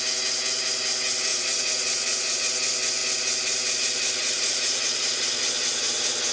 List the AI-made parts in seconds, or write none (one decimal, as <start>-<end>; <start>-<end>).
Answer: 1.3-2.4; 4.2-5.2